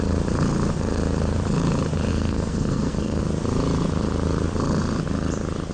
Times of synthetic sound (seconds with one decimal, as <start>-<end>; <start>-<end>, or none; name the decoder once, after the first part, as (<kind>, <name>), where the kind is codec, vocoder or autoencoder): 2.1-3.2 (codec, SNAC)